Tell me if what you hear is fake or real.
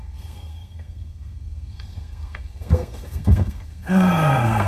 fake